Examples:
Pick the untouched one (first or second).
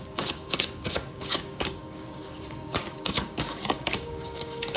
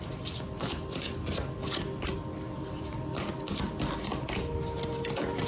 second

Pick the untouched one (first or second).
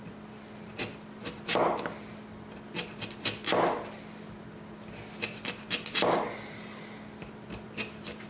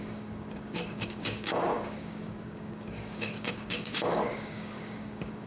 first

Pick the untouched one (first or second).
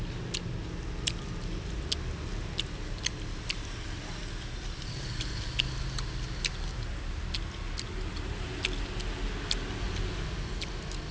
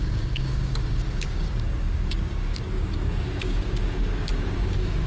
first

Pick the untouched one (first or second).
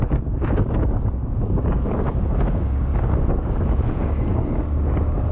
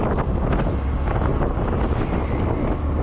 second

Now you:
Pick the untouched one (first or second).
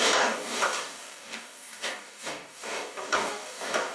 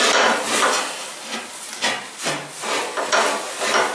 second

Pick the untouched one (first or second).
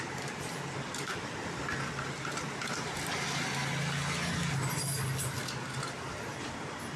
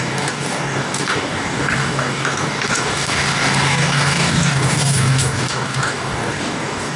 first